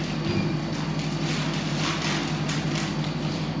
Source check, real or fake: real